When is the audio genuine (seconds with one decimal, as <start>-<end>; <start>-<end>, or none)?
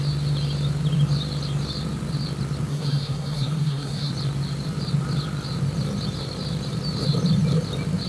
0.0-2.7; 4.1-8.1